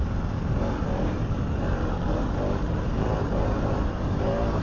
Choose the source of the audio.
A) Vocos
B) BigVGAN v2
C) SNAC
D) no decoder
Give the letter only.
B